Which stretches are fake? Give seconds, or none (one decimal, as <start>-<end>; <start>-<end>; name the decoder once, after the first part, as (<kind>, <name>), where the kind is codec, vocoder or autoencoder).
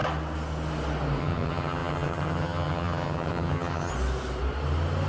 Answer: 1.2-3.9 (vocoder, HiFi-GAN)